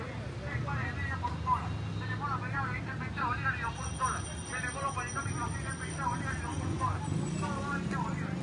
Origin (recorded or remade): recorded